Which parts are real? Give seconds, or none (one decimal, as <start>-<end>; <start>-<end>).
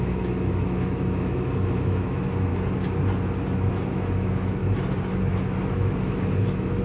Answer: 2.5-3.7; 4.6-5.1